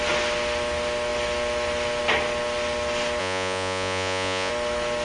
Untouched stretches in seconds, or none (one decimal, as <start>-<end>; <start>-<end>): 0.0-3.2; 4.5-5.0